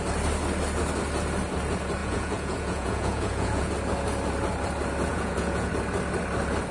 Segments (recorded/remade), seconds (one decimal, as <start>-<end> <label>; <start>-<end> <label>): 0.0-2.0 recorded; 2.0-3.7 remade; 3.7-5.1 recorded; 5.1-5.7 remade; 5.7-6.7 recorded